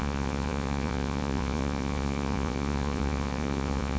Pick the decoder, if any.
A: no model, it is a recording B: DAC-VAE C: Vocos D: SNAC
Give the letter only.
C